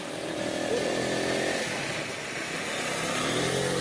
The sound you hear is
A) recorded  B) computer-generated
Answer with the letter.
A